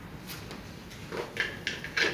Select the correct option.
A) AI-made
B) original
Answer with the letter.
B